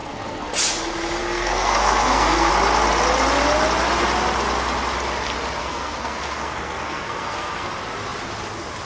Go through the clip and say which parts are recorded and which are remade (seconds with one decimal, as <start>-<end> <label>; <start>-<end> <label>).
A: 0.0-0.5 remade; 0.5-1.2 recorded; 1.2-2.5 remade; 2.5-5.6 recorded; 5.6-7.7 remade; 7.7-8.9 recorded